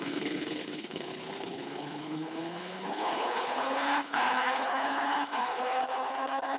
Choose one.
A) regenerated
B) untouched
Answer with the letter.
A